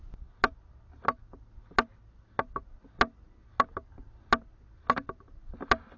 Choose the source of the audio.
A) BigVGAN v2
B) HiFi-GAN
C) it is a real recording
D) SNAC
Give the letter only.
C